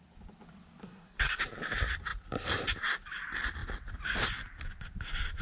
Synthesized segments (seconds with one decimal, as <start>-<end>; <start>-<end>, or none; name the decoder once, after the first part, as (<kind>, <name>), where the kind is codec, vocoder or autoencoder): 0.8-1.4 (codec, SNAC)